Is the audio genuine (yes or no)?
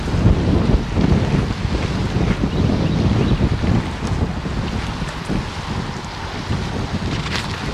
yes